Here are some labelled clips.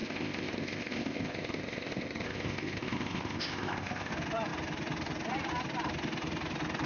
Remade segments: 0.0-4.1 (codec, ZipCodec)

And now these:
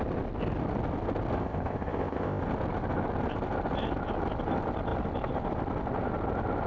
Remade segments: 1.4-2.4 (codec, ZipCodec)

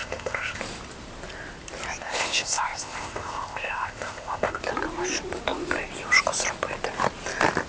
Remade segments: 0.0-0.6 (codec, ZipCodec); 2.0-4.6

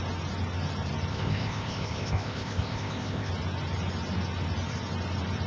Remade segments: 1.1-3.3 (codec, ZipCodec)

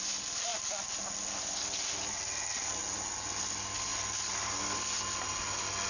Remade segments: none

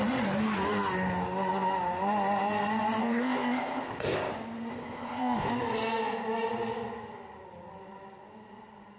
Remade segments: 3.0-4.3 (codec, ZipCodec); 4.7-5.5

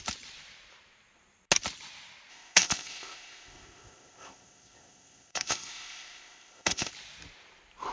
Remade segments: 2.3-6.9 (codec, ZipCodec)